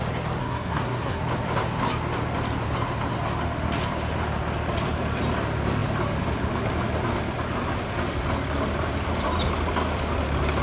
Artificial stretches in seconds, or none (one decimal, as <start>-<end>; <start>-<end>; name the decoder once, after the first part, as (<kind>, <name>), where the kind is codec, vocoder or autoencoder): 0.4-1.2 (codec, SNAC)